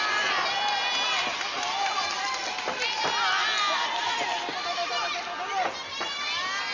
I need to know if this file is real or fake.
real